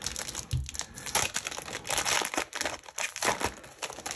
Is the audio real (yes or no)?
yes